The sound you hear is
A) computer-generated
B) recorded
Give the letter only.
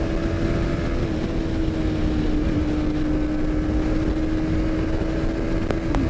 B